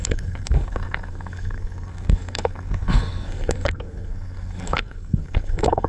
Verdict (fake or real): fake